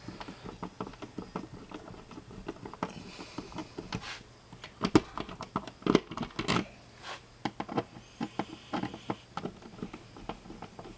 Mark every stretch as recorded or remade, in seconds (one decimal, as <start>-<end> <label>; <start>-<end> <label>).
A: 0.0-11.0 recorded